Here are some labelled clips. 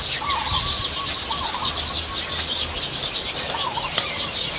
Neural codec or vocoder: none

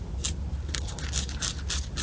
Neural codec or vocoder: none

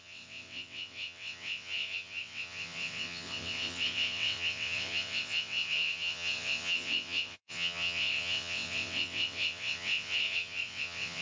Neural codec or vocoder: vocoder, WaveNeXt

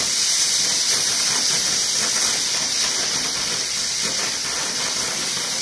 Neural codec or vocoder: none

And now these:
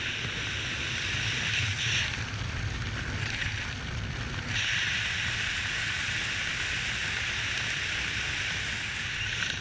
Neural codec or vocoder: none